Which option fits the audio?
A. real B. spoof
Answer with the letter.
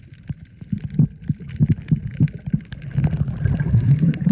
A